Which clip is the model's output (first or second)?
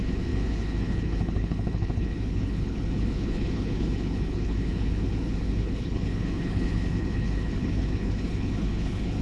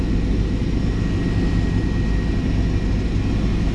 first